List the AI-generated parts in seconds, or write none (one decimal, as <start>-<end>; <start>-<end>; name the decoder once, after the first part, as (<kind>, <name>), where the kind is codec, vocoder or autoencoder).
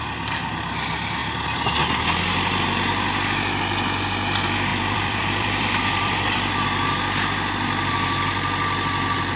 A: 1.2-1.8 (vocoder, BigVGAN v2); 4.7-6.5